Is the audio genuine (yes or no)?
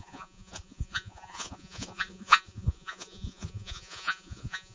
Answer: no